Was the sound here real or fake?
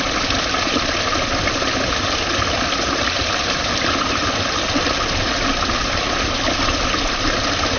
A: real